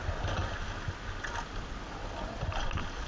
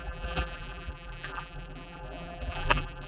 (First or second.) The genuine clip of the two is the first